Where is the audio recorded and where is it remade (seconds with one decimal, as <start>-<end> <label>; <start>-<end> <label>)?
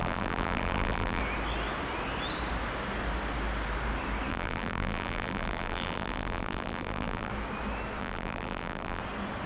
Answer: 0.0-1.2 remade; 1.2-4.3 recorded; 4.3-7.3 remade; 7.3-8.0 recorded; 8.0-9.0 remade; 9.0-9.5 recorded